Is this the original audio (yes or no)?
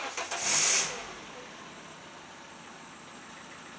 yes